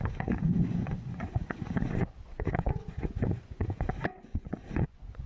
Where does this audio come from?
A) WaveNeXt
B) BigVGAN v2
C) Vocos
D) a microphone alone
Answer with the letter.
C